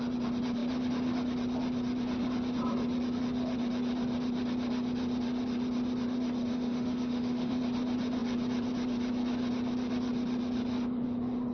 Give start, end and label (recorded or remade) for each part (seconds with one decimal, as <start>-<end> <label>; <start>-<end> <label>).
0.0-6.5 recorded; 6.5-7.6 remade; 7.6-11.5 recorded